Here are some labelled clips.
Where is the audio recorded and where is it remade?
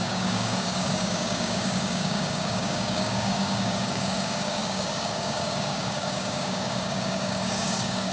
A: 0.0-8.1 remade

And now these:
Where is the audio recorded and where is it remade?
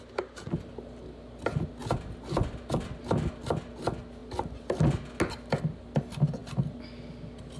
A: 0.0-7.6 recorded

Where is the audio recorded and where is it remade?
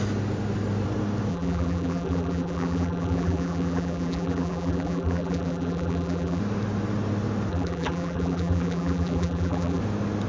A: 0.0-1.3 recorded; 1.3-6.4 remade; 6.4-7.5 recorded; 7.5-9.8 remade; 9.8-10.3 recorded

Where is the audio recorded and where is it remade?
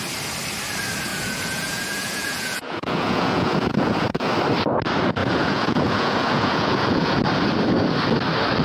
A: 0.0-1.1 recorded; 1.1-4.3 remade; 4.3-5.2 recorded; 5.2-7.2 remade; 7.2-8.6 recorded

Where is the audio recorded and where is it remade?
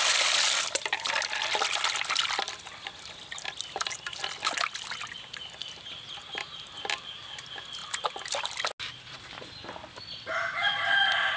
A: 0.0-11.4 recorded